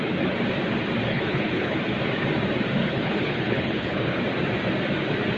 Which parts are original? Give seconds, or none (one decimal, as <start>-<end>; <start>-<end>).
0.0-1.1; 1.8-2.8; 4.2-5.4